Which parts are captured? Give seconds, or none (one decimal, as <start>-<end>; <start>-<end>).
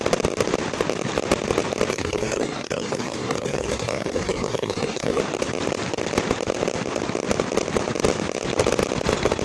0.0-1.9; 5.2-9.4